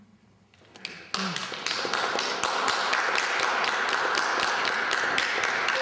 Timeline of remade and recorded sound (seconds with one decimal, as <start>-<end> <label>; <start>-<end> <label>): 0.0-5.8 recorded